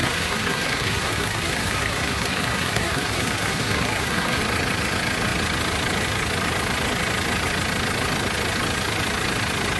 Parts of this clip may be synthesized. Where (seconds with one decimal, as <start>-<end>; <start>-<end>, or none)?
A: 0.0-4.4